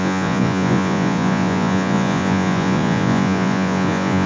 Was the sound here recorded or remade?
remade